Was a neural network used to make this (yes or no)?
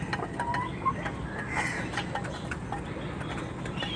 no